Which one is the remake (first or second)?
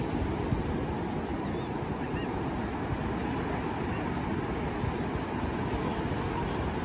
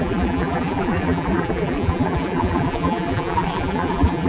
second